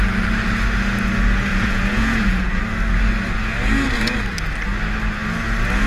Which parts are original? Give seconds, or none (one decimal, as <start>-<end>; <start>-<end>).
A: 0.0-1.5; 2.6-5.9